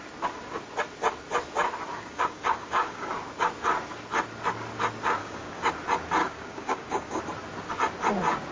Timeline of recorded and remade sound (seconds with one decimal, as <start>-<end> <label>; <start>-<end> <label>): 0.0-1.9 recorded; 1.9-3.1 remade; 3.1-5.2 recorded; 5.2-5.7 remade; 5.7-6.2 recorded; 6.2-7.2 remade; 7.2-8.5 recorded